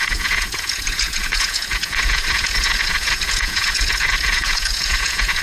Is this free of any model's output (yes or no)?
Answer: no